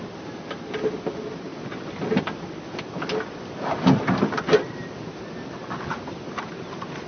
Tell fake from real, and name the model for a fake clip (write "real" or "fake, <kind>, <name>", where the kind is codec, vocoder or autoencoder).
real